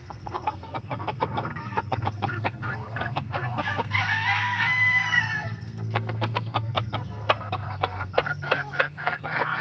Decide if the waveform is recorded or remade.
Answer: remade